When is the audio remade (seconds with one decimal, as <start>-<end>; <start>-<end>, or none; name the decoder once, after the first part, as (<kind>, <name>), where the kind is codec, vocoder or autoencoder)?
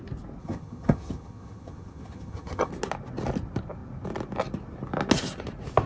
0.4-2.7 (vocoder, HiFi-GAN)